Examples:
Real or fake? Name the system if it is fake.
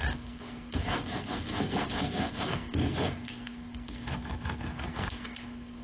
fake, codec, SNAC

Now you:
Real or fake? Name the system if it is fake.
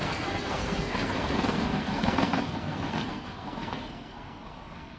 fake, codec, SNAC